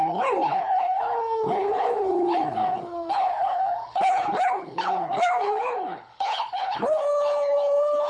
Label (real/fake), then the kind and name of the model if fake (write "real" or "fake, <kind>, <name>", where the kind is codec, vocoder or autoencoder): fake, codec, HILCodec